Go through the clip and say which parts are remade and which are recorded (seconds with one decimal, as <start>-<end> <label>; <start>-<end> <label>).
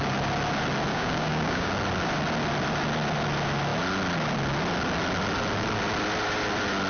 0.0-0.9 recorded; 0.9-1.7 remade; 1.7-6.9 recorded